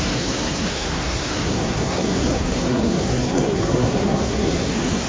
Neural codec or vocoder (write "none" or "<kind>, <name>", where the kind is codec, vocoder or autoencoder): codec, SNAC